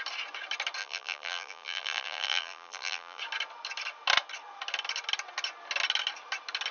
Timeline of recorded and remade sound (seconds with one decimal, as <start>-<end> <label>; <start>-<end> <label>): 0.0-0.8 recorded; 0.8-3.2 remade; 3.2-6.7 recorded